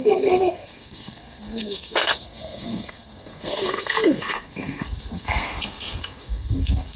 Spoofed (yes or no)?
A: yes